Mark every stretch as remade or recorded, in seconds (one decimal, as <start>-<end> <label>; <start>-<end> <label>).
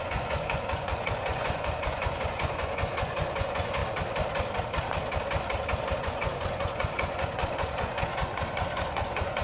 0.0-3.8 remade; 3.8-6.0 recorded; 6.0-9.4 remade